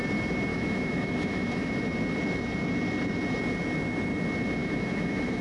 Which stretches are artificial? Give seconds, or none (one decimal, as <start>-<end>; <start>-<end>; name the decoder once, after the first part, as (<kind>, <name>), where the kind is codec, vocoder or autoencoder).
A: 0.5-1.7 (autoencoder, DAC-VAE); 4.6-5.4